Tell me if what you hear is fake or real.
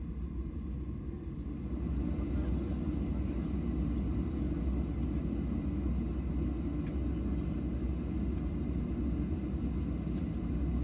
real